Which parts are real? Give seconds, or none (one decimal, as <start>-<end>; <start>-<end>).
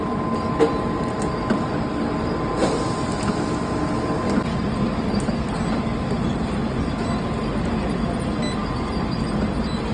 0.0-9.9